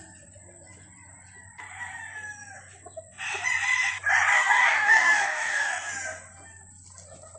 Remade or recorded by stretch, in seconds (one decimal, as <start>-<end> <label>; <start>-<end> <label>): 0.0-4.3 recorded; 4.3-5.9 remade; 5.9-7.4 recorded